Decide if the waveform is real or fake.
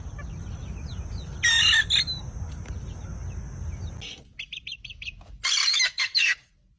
real